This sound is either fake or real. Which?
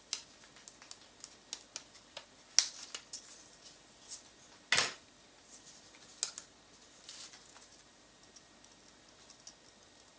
real